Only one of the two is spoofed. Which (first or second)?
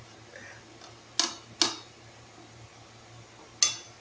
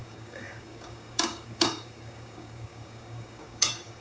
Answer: second